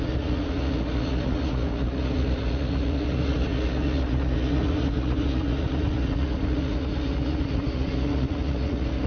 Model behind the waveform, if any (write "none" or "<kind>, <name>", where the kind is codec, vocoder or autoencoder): vocoder, Vocos